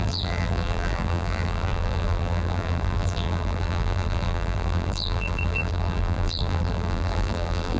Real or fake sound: fake